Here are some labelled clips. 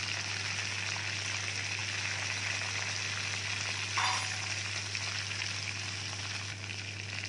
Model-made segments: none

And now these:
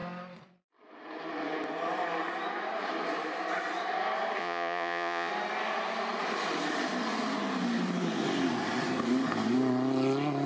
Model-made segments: 4.4-5.3 (vocoder, Vocos)

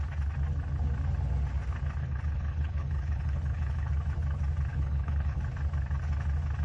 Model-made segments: 2.0-3.9 (codec, HILCodec); 4.7-5.4